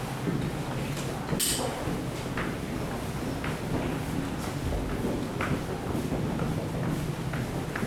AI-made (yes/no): no